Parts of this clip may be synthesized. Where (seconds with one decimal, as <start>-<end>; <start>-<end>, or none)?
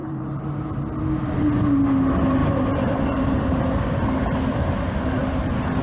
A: 0.0-1.0; 2.4-4.0; 5.2-5.8